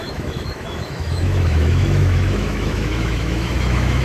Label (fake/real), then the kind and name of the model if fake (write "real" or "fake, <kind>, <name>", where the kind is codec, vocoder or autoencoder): fake, autoencoder, DAC-VAE